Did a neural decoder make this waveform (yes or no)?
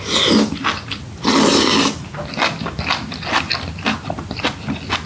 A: no